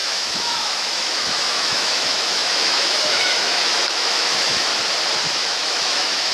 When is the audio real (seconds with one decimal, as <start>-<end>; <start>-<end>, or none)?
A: 4.7-5.3